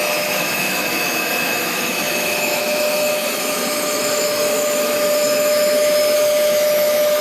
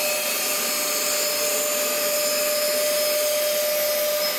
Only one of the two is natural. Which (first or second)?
second